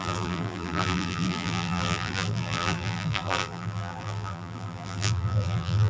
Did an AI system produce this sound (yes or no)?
yes